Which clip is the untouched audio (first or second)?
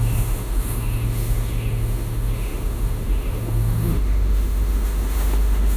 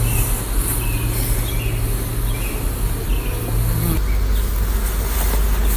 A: second